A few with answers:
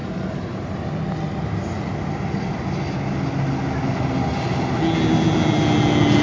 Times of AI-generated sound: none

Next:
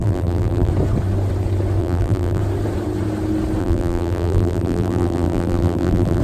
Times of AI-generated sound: 0.0-0.7 (vocoder, BigVGAN v2); 1.8-2.4; 3.6-6.2

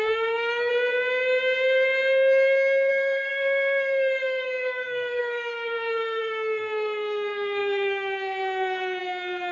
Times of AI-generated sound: 0.0-0.7 (codec, SNAC); 2.9-9.5

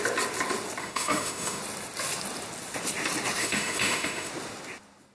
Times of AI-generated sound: 0.8-1.6 (autoencoder, DAC-VAE); 3.4-4.3

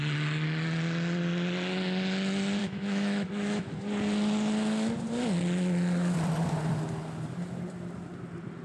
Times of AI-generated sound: 2.6-3.7 (autoencoder, DAC-VAE)